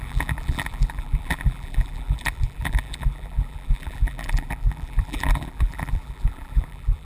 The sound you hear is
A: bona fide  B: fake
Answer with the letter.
B